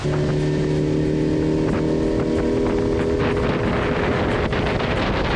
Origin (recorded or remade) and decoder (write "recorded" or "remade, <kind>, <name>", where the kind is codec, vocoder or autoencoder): recorded